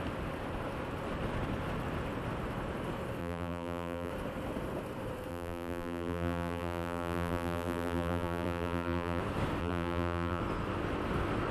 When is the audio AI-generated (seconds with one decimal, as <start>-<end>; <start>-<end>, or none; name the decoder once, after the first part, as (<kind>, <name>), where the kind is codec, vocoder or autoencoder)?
3.2-4.1 (vocoder, BigVGAN v2); 5.3-9.2; 9.6-10.4